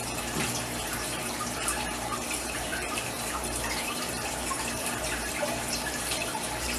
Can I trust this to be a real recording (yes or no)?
no